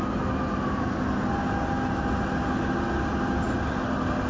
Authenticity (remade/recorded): recorded